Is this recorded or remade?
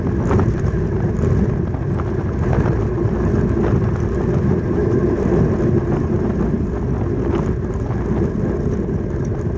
recorded